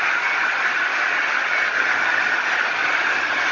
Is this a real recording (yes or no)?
yes